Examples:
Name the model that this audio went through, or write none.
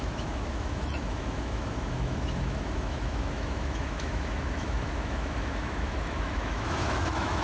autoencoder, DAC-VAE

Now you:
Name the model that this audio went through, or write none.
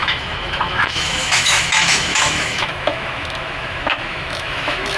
autoencoder, DAC-VAE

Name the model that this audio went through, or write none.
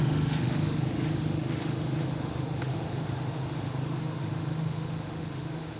autoencoder, DAC-VAE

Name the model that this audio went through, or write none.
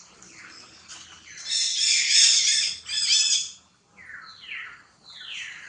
none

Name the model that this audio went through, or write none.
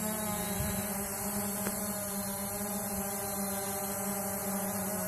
none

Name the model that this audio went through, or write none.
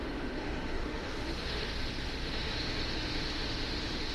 autoencoder, DAC-VAE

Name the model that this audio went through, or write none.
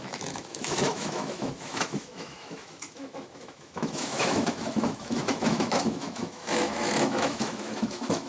autoencoder, DAC-VAE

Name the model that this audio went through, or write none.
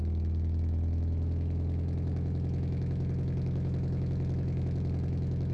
autoencoder, DAC-VAE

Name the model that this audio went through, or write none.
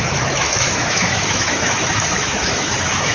autoencoder, DAC-VAE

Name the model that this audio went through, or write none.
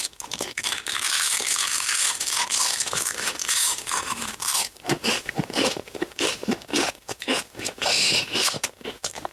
autoencoder, DAC-VAE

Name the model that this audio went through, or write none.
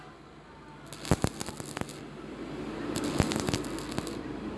none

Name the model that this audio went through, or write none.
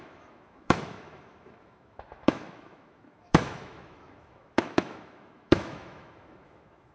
autoencoder, DAC-VAE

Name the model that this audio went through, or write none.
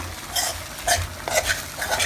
none